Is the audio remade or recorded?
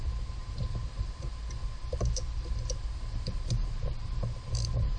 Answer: remade